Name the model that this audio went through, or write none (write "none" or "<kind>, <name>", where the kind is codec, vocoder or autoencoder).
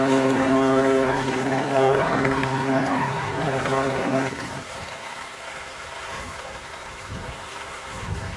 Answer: codec, SNAC